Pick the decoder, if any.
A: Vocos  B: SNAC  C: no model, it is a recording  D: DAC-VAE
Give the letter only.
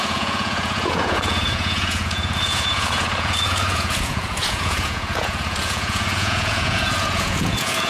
A